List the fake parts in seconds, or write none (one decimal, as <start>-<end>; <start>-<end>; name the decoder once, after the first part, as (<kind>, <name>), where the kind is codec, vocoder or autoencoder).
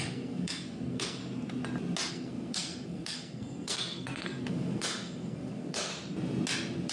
0.0-1.2 (codec, SNAC); 2.1-5.9